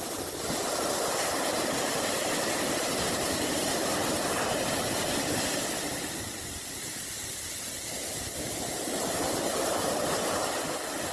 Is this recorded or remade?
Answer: recorded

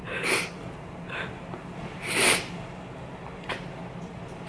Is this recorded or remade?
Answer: recorded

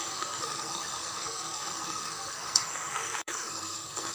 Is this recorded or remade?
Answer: remade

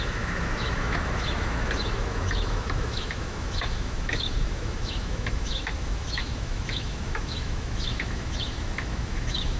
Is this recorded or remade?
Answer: remade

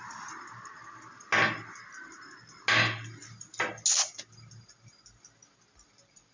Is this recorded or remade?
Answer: recorded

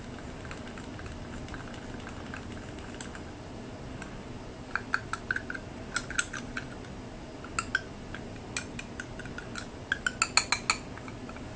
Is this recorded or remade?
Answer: recorded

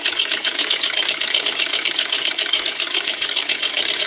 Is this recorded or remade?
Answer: remade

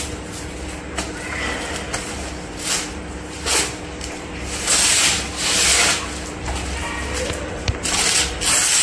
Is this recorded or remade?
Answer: recorded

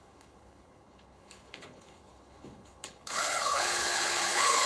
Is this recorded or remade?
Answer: remade